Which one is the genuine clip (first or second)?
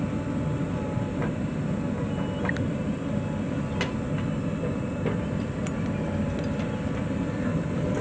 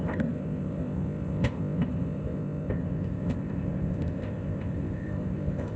first